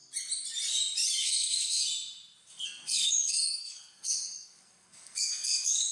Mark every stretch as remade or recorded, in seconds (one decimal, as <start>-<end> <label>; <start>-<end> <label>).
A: 0.0-1.2 recorded; 1.2-1.8 remade; 1.8-2.5 recorded; 2.5-5.9 remade